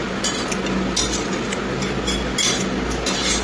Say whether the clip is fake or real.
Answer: real